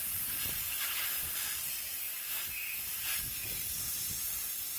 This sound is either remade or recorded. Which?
remade